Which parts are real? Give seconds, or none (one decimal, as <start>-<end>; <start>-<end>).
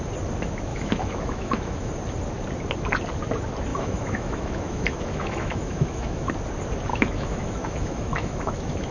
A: 0.0-0.7; 1.9-3.7; 6.3-6.9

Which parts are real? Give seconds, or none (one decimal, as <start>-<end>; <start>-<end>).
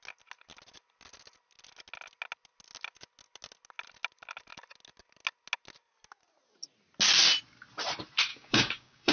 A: 0.0-8.3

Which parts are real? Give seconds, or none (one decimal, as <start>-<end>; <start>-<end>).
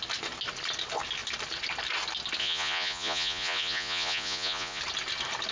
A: 0.0-2.4; 4.8-5.5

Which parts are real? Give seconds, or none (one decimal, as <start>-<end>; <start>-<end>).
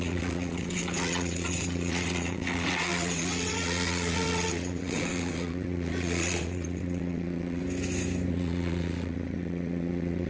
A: 7.6-8.3